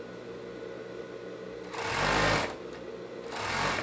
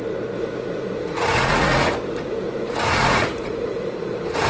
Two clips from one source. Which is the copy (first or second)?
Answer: second